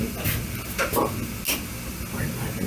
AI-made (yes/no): no